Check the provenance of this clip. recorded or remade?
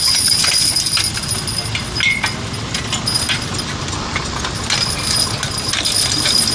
recorded